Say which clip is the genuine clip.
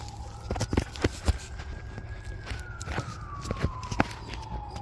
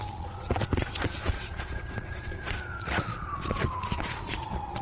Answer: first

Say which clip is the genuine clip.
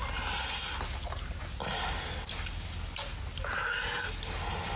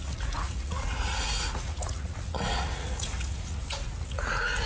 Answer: first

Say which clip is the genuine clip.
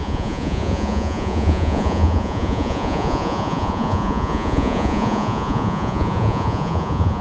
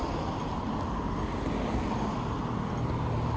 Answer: second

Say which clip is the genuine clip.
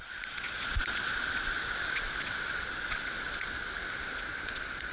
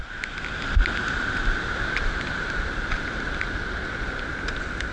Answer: second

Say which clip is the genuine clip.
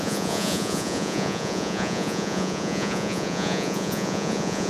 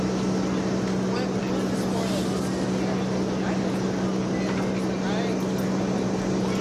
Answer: second